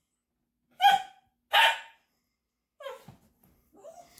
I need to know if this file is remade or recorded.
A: recorded